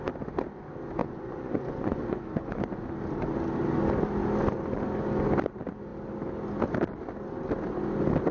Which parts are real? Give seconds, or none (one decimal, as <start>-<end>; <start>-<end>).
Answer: 0.0-1.0; 2.6-8.3